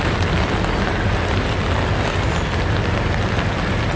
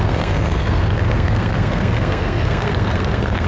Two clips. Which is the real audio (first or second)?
first